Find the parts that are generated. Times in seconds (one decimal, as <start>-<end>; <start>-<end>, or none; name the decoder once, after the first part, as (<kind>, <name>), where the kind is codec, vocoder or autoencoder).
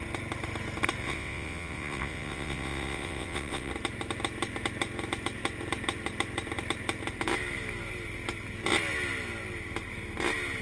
1.0-3.7 (vocoder, WaveNeXt)